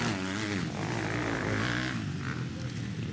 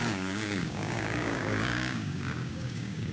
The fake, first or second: second